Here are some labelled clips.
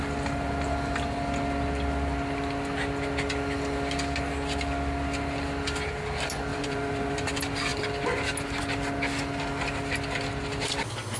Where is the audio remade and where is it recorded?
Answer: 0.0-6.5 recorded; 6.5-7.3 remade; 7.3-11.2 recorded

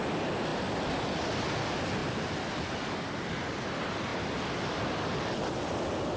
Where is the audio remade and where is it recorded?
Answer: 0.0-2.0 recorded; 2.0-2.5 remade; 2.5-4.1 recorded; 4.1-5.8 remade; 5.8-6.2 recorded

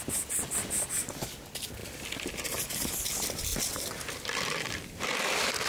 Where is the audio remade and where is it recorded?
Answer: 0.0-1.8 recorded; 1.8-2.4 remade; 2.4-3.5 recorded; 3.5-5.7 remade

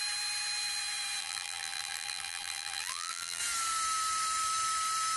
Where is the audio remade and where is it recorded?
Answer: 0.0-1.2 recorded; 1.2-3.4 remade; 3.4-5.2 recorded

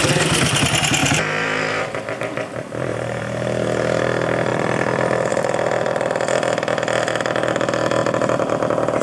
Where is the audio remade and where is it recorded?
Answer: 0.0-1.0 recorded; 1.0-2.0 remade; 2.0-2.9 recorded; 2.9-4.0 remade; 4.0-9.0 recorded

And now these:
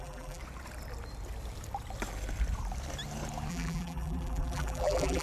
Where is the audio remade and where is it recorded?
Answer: 0.0-0.4 remade; 0.4-3.5 recorded; 3.5-5.2 remade